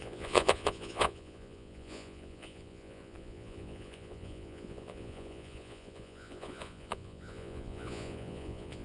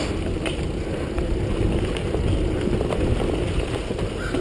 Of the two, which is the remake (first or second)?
first